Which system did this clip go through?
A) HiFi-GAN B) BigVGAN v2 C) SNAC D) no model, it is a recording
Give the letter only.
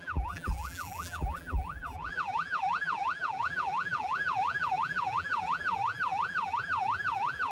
B